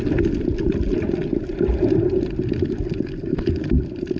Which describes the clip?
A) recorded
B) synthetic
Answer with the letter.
A